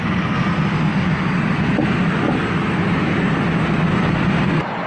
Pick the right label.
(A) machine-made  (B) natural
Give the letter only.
B